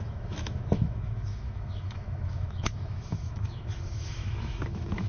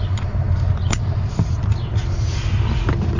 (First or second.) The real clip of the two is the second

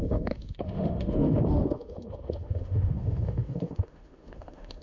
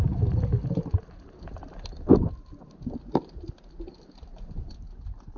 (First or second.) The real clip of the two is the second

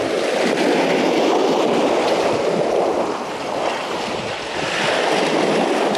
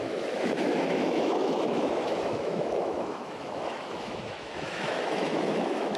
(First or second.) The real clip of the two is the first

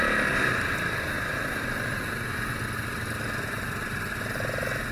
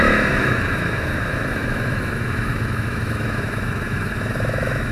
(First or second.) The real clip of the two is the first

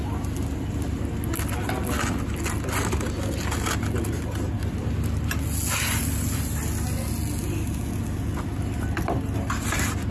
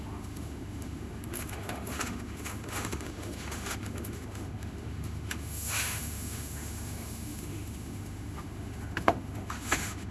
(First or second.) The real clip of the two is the first